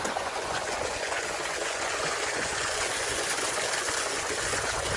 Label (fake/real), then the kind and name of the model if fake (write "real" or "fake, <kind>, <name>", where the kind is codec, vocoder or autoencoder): fake, vocoder, Vocos